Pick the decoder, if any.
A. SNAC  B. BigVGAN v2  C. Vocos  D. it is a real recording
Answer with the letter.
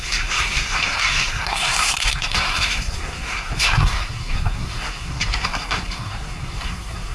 A